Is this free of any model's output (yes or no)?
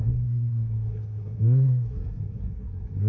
no